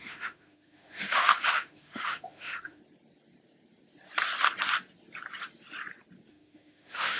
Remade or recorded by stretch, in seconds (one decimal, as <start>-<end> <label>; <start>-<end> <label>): 0.0-2.8 remade; 2.8-6.3 recorded; 6.3-7.2 remade